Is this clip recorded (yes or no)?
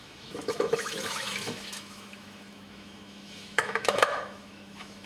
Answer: no